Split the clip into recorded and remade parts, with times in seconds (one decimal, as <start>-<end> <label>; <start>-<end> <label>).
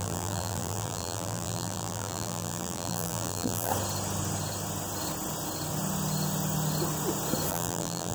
0.0-3.7 remade; 3.7-7.5 recorded; 7.5-8.1 remade